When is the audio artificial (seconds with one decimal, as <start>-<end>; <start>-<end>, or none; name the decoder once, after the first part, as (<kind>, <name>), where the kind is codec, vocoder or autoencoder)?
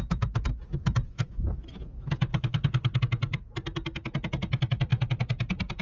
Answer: 2.3-3.0 (codec, HILCodec)